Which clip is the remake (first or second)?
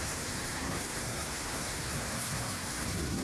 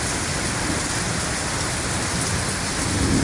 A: first